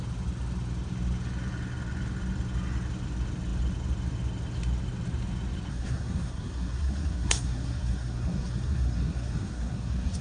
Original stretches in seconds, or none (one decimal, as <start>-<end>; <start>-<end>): 0.0-5.7